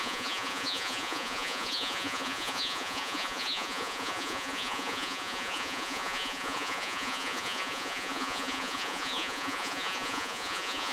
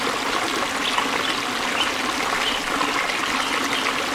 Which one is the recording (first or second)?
second